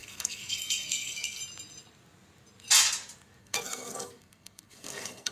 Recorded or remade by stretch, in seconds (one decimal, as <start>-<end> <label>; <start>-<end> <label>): 0.0-1.4 remade; 1.4-3.4 recorded; 3.4-5.3 remade